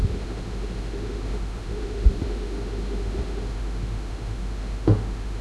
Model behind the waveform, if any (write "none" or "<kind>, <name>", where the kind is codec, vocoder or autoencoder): autoencoder, DAC-VAE